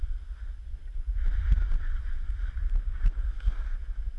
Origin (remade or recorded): recorded